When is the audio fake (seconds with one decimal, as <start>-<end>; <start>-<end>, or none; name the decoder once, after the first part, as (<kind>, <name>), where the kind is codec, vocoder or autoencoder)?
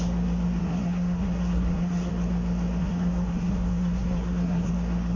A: 0.6-2.1 (codec, SNAC); 2.8-4.7